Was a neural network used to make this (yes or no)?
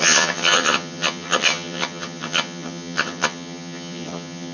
yes